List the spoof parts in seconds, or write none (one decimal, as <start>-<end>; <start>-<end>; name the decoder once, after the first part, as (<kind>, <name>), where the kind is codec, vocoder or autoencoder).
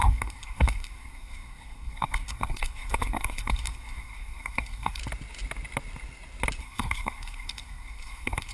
0.0-5.0 (codec, SNAC); 6.6-8.5